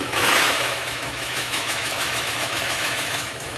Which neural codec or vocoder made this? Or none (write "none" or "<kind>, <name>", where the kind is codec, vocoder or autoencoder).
autoencoder, DAC-VAE